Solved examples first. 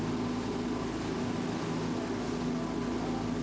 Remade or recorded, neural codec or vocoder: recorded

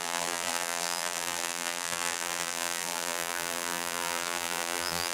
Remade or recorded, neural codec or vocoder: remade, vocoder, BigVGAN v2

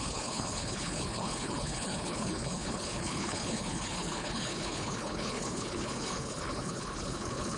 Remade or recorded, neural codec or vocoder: remade, codec, HILCodec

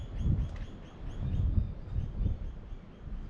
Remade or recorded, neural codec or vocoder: recorded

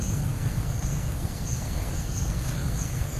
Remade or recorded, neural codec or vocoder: remade, codec, SNAC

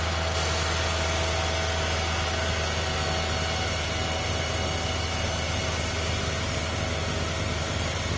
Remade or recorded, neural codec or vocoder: recorded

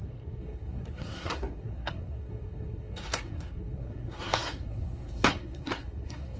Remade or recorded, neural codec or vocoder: remade, codec, SNAC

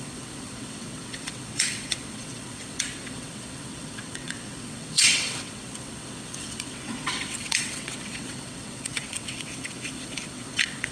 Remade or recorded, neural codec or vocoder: remade, vocoder, WaveNeXt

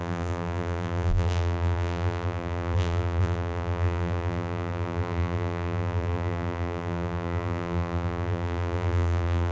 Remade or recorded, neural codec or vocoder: remade, vocoder, BigVGAN v2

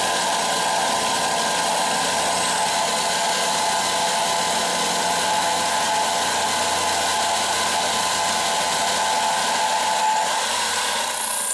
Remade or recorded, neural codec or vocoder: recorded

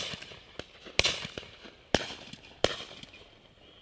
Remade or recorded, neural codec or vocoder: recorded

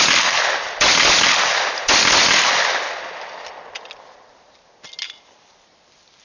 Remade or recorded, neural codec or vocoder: recorded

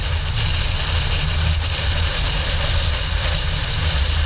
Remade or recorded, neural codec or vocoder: recorded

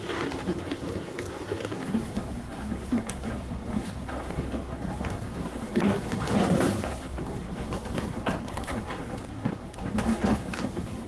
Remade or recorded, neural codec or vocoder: remade, codec, SNAC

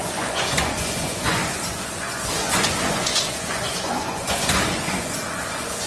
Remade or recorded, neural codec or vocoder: remade, vocoder, Vocos